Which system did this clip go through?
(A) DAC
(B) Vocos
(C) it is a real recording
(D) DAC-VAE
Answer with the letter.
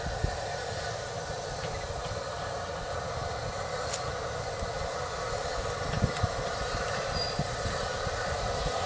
C